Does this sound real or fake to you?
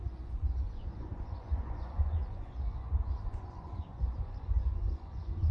fake